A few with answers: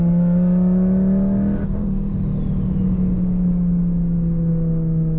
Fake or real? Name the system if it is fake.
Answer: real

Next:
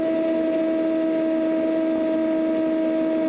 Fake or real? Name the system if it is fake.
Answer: real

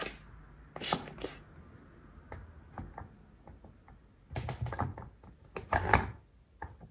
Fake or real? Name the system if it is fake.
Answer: real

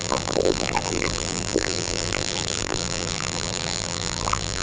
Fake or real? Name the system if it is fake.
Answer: fake, vocoder, BigVGAN v2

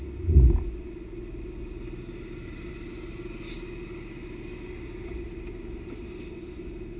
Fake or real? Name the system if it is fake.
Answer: real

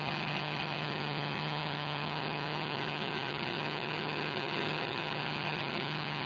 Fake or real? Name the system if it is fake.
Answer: fake, vocoder, HiFi-GAN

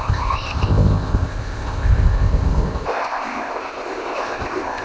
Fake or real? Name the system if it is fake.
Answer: fake, codec, ZipCodec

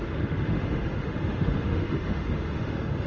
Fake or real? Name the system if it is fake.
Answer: fake, autoencoder, DAC-VAE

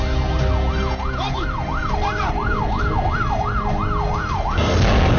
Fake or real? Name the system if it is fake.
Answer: real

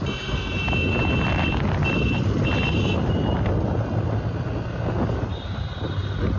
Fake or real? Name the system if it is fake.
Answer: real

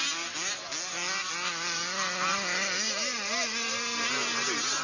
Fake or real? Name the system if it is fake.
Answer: real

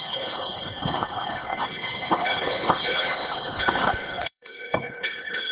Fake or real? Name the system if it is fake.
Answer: fake, codec, HILCodec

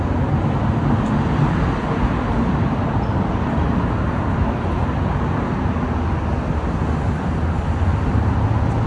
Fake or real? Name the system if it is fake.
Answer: real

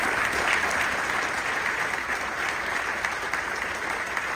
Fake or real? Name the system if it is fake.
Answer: real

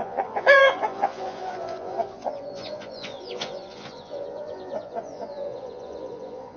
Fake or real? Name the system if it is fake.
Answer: fake, vocoder, Vocos